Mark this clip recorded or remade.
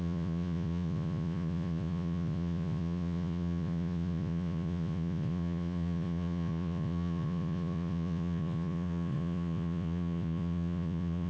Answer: remade